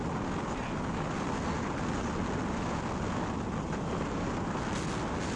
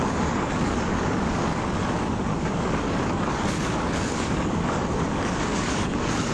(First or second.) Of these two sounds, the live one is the first